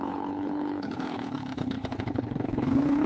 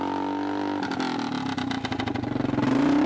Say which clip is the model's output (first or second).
first